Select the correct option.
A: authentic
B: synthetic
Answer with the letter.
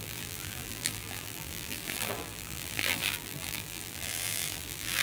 B